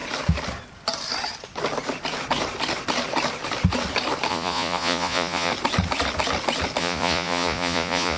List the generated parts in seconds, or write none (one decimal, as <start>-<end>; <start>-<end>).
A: 4.3-5.5; 6.8-8.2